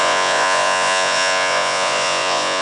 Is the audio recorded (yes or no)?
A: no